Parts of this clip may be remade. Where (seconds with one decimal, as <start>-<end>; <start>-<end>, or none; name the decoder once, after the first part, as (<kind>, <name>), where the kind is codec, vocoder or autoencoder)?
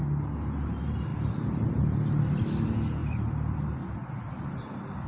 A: 3.0-4.5 (vocoder, BigVGAN v2)